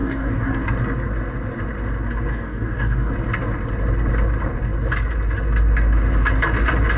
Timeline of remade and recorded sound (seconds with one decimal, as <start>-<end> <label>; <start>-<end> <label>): 0.0-0.6 remade; 0.6-2.3 recorded; 2.3-3.1 remade; 3.1-7.0 recorded